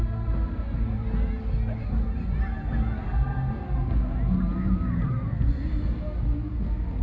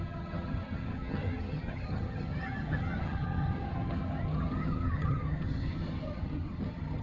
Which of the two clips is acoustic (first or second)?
first